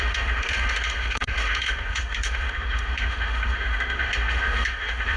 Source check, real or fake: fake